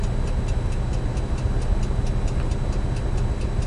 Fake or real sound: real